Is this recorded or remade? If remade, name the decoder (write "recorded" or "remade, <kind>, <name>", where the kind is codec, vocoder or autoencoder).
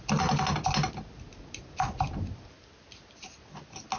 recorded